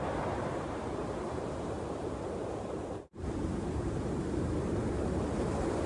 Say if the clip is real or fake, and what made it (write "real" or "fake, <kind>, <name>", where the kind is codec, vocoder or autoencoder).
fake, vocoder, BigVGAN v2